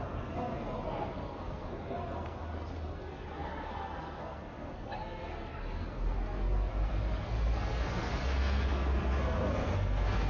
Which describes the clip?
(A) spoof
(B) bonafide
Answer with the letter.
A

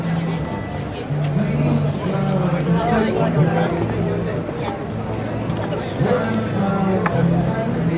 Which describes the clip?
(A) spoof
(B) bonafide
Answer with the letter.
B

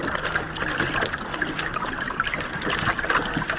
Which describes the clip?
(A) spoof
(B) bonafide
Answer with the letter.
B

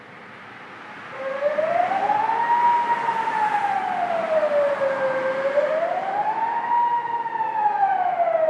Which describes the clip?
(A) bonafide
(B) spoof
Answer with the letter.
A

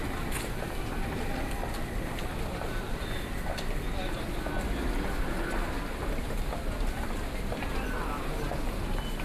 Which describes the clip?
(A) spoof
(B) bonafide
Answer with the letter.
B